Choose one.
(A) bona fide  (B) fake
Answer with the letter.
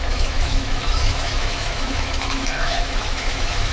B